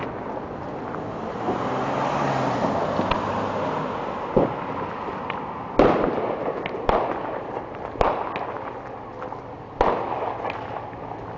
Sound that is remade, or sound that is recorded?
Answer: recorded